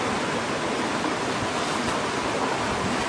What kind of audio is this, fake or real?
real